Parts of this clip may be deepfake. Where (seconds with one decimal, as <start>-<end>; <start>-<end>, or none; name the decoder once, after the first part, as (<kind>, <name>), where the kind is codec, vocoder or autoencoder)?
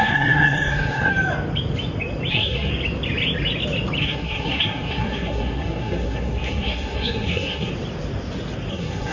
0.0-1.1 (codec, SNAC); 2.3-2.7; 4.0-7.7; 8.7-9.1